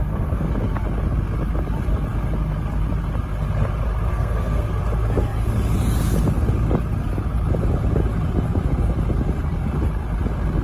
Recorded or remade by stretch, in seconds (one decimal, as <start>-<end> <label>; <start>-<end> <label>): 0.0-0.5 remade; 0.5-4.1 recorded; 4.1-4.8 remade; 4.8-10.6 recorded